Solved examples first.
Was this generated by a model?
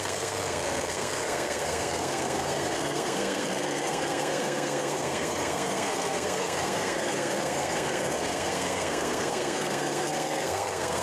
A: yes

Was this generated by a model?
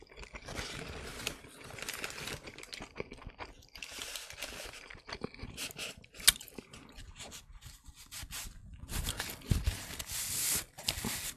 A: no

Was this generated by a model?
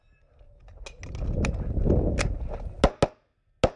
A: no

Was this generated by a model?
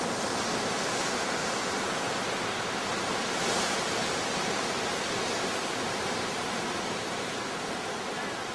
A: no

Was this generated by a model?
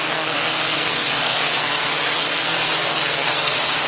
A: yes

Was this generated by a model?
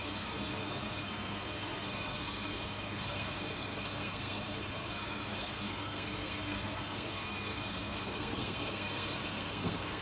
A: yes